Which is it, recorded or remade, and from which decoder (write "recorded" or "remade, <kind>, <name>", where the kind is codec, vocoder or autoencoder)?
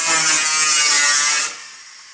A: recorded